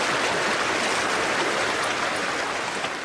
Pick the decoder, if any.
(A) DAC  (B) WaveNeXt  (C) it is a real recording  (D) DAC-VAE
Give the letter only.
C